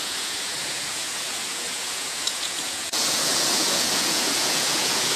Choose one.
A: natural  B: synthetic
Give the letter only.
B